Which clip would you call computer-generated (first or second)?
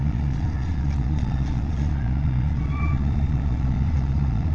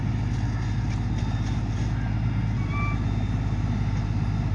first